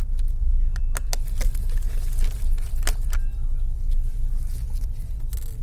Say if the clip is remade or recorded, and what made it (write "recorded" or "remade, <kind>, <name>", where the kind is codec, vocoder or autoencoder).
recorded